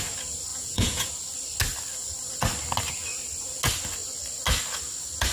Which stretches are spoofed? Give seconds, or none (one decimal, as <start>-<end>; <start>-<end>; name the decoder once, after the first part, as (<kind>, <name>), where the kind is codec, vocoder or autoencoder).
0.5-1.1 (vocoder, Vocos)